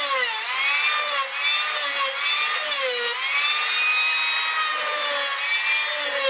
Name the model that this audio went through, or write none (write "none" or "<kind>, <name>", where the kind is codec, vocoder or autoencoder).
none